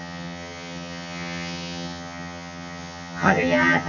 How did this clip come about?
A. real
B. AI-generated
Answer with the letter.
B